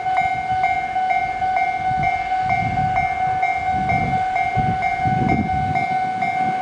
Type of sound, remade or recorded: recorded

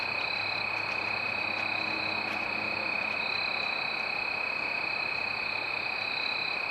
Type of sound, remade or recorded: recorded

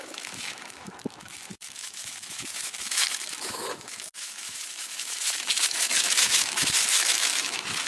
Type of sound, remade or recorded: remade